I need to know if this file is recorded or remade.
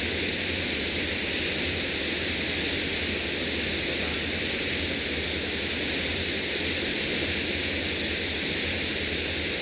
recorded